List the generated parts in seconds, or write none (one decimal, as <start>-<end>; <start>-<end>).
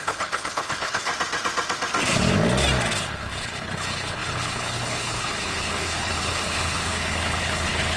0.0-1.1; 3.0-8.0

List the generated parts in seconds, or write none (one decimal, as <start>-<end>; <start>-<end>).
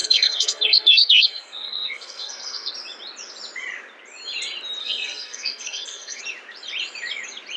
0.0-2.7; 4.8-6.2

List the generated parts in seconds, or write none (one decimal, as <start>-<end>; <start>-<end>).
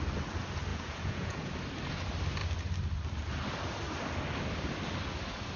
0.7-1.5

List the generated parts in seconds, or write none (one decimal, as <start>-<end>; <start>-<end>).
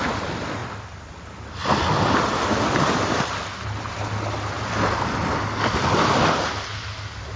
none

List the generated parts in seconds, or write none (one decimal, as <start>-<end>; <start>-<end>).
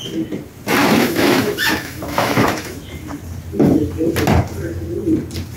0.8-2.8